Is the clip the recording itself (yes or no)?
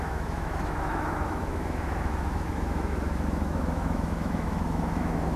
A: no